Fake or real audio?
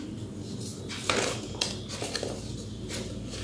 real